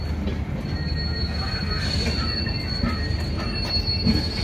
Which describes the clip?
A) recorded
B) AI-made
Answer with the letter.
A